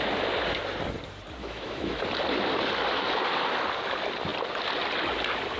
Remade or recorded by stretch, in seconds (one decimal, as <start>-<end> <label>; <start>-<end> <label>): 0.0-1.4 recorded; 1.4-2.0 remade; 2.0-5.6 recorded

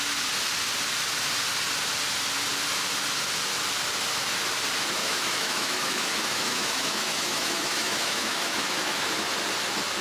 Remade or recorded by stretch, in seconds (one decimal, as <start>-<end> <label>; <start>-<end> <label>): 0.0-5.0 recorded; 5.0-9.3 remade; 9.3-10.0 recorded

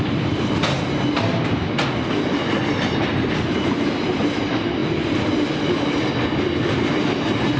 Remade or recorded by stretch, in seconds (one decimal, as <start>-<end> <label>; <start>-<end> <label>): 0.0-7.6 recorded

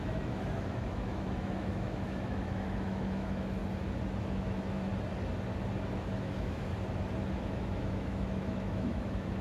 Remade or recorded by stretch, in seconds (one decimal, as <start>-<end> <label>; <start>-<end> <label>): 0.0-3.6 remade; 3.6-4.2 recorded; 4.2-4.9 remade; 4.9-5.9 recorded; 5.9-6.7 remade; 6.7-7.4 recorded; 7.4-9.4 remade

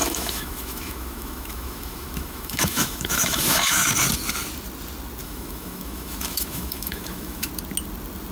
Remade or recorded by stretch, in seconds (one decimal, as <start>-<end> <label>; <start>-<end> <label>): 0.0-3.9 remade; 3.9-5.2 recorded; 5.2-7.5 remade; 7.5-8.3 recorded

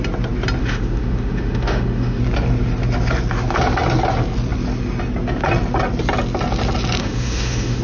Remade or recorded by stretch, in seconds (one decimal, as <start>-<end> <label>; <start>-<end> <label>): 0.0-0.6 recorded; 0.6-2.2 remade; 2.2-7.0 recorded; 7.0-7.8 remade